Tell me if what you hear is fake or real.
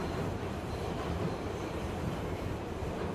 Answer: fake